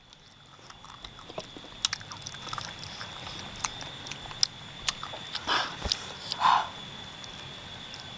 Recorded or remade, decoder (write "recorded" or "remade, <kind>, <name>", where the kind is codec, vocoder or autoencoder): recorded